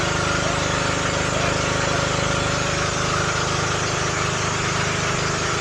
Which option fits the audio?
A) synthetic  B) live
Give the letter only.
B